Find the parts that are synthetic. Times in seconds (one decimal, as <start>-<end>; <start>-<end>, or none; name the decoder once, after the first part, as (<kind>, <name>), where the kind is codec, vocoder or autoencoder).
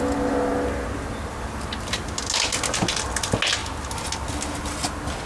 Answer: none